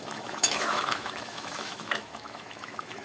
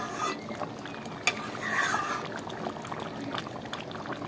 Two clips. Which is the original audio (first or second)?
second